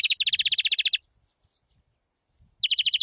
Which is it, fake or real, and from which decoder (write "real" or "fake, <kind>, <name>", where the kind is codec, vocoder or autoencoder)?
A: real